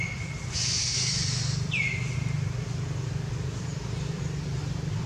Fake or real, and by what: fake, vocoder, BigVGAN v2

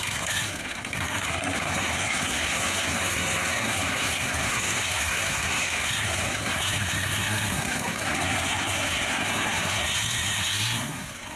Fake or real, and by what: fake, codec, SNAC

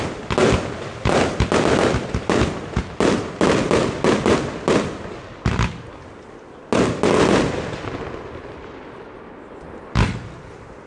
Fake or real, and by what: real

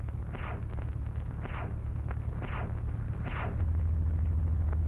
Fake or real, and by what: real